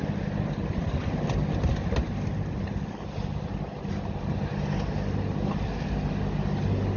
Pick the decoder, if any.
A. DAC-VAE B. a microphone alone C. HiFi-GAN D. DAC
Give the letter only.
B